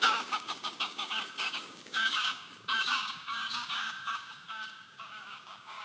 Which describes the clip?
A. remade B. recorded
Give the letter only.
A